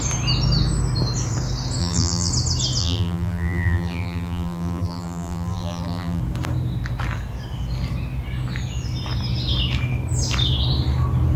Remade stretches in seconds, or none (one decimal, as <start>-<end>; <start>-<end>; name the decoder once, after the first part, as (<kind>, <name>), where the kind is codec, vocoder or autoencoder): 1.8-2.3 (vocoder, BigVGAN v2); 2.8-6.2

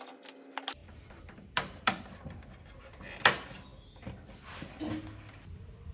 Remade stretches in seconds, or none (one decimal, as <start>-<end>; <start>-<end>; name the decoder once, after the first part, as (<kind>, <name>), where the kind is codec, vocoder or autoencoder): 0.8-2.4 (vocoder, BigVGAN v2)

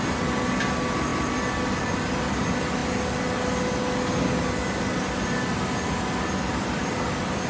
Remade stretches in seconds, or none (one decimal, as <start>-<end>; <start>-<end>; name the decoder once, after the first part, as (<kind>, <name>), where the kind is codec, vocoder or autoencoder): none

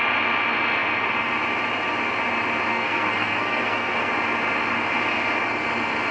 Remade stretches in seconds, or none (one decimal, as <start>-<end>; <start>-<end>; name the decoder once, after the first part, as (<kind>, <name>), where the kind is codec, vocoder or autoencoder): 2.7-4.1 (codec, SNAC)

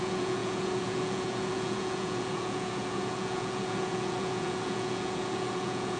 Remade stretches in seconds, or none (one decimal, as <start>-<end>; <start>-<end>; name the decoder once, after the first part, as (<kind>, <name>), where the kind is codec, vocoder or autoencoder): 0.0-6.0 (vocoder, Vocos)

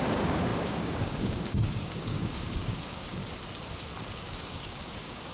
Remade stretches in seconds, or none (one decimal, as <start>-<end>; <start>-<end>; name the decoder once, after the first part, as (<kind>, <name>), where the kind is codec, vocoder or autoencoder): 0.0-3.2 (codec, DAC); 4.0-5.3

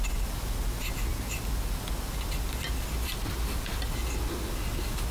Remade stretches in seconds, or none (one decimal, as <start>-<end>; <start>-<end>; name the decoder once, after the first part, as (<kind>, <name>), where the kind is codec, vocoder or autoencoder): none

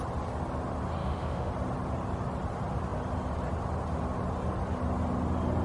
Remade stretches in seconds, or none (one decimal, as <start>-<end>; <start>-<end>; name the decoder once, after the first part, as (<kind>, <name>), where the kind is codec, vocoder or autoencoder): 1.0-1.5 (autoencoder, DAC-VAE)